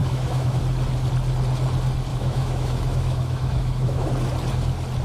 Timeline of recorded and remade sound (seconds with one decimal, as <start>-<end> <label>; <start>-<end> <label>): 0.0-0.6 remade; 0.6-2.1 recorded; 2.1-4.1 remade; 4.1-5.0 recorded